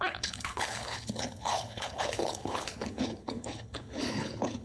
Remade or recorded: remade